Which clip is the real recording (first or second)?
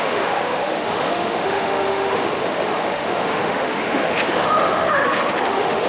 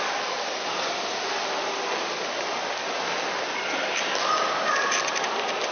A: second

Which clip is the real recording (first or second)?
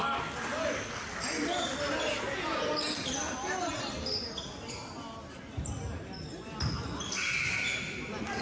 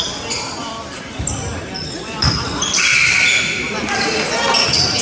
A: first